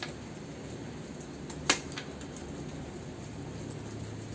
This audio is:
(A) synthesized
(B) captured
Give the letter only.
B